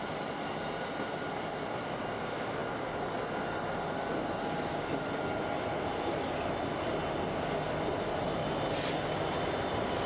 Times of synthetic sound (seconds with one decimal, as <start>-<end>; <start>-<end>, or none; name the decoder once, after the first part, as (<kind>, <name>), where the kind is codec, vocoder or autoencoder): 1.4-2.6 (vocoder, BigVGAN v2); 7.6-8.4; 9.6-10.1

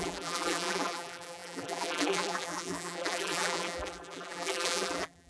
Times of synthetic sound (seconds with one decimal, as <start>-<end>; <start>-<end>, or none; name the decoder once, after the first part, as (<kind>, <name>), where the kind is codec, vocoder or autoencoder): 0.0-5.3 (vocoder, BigVGAN v2)